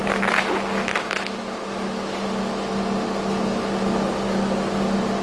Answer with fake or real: real